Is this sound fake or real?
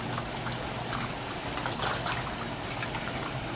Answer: real